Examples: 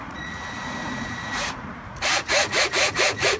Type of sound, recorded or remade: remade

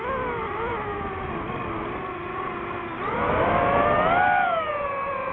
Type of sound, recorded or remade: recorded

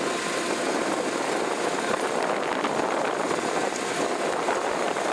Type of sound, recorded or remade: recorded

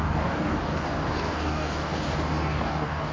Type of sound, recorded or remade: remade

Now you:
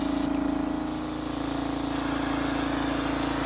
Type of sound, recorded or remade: recorded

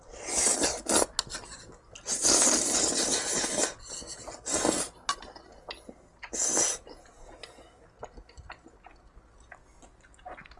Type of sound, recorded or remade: recorded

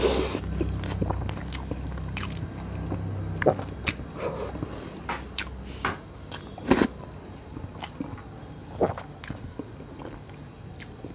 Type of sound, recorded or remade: recorded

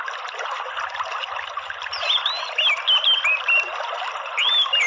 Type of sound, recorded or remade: recorded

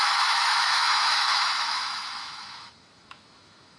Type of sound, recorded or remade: remade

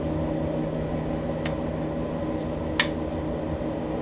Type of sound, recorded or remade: recorded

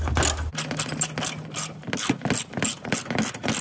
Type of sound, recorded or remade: recorded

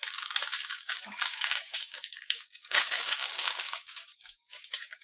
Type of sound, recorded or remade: remade